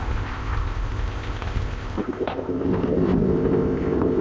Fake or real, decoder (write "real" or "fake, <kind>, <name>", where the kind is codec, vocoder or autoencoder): fake, codec, ZipCodec